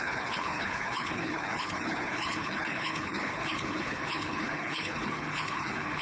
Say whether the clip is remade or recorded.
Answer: remade